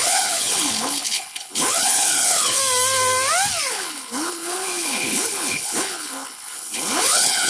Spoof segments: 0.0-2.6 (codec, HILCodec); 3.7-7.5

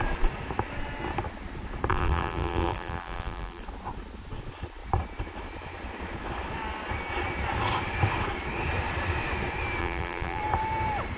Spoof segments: 1.9-3.6 (vocoder, BigVGAN v2); 9.8-10.4